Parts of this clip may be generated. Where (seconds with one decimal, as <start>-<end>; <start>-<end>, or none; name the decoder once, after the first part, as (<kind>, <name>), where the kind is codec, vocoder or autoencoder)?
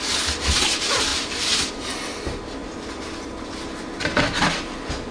1.1-1.7 (vocoder, BigVGAN v2)